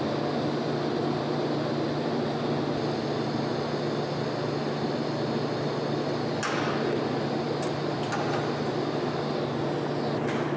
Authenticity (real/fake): real